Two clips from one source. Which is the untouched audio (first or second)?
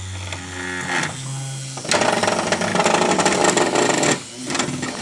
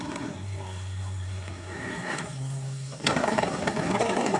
first